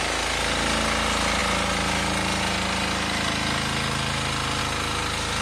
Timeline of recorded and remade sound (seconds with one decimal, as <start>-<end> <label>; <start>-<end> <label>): 0.0-5.4 recorded